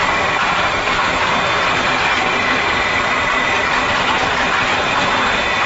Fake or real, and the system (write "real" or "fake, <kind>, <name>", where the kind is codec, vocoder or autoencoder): real